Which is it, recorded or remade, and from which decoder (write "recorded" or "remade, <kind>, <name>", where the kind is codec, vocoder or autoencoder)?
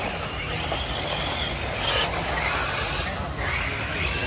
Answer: recorded